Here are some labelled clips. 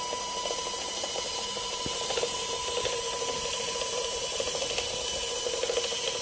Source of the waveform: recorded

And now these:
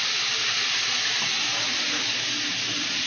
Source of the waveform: recorded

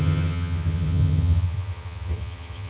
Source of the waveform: remade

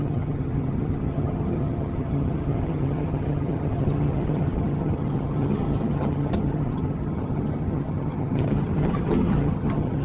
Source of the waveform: remade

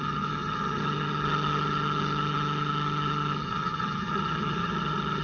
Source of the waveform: remade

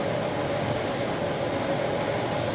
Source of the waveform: recorded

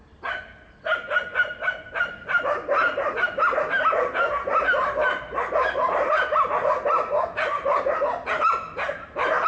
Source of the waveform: recorded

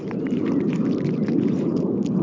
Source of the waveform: recorded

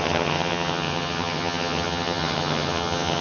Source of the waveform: remade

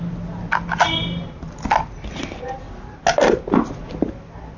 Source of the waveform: recorded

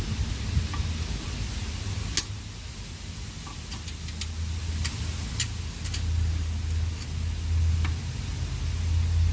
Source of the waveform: recorded